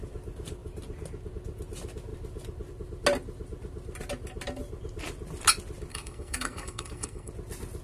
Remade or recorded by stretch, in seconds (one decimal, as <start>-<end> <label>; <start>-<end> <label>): 0.0-5.9 recorded; 5.9-7.3 remade; 7.3-7.8 recorded